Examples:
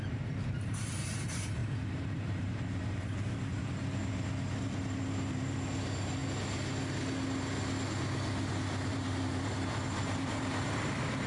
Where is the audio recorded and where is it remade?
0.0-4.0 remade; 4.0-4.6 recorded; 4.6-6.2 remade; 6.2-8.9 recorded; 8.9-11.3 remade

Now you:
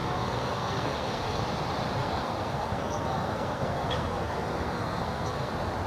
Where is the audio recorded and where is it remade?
0.0-1.4 remade; 1.4-2.0 recorded; 2.0-5.5 remade; 5.5-5.9 recorded